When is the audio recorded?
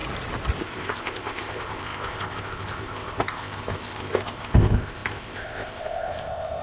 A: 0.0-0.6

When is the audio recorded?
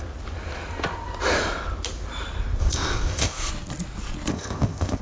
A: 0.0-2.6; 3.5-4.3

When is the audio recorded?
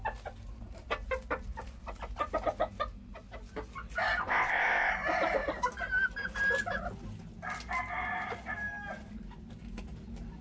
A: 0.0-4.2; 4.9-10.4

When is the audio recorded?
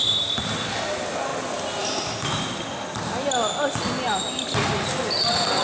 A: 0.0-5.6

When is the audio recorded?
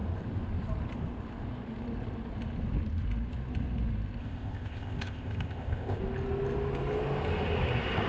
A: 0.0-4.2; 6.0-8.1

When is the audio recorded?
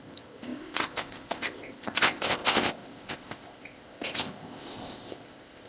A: none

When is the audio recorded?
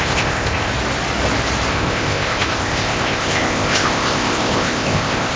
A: 0.7-1.7